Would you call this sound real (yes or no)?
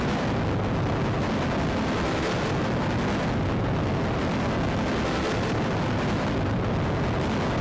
yes